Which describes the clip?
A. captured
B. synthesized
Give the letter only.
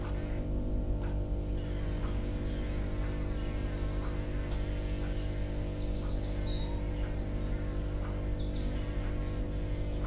A